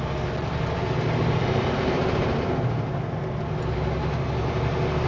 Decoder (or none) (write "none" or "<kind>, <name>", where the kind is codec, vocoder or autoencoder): none